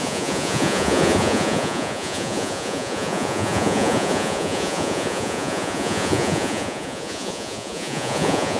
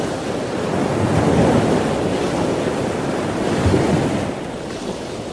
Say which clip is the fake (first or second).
first